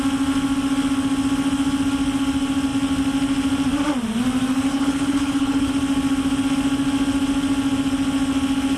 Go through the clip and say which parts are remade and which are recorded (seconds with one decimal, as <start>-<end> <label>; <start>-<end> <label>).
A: 0.0-4.7 recorded; 4.7-5.7 remade; 5.7-8.8 recorded